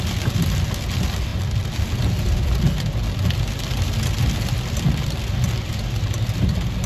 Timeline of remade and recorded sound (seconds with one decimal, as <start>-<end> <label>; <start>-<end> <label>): 0.0-6.9 recorded